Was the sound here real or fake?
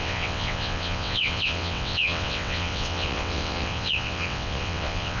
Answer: fake